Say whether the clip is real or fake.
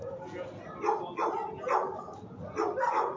real